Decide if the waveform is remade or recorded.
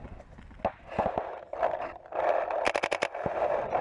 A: recorded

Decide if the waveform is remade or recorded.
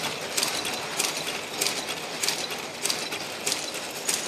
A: recorded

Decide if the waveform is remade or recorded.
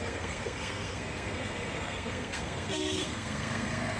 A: remade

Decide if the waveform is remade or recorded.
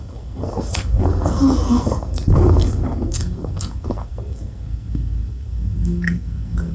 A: remade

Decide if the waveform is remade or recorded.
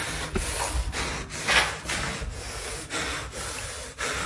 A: recorded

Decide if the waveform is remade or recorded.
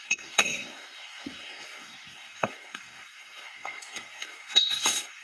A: remade